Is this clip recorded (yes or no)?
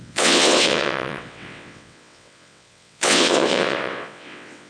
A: no